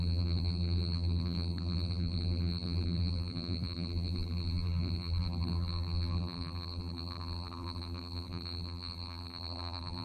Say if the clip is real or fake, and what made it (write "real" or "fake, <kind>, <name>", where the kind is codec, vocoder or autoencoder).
fake, vocoder, BigVGAN v2